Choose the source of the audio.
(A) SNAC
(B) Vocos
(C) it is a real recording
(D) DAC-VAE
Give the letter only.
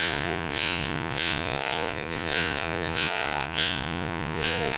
B